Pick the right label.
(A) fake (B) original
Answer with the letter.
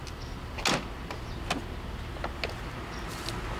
B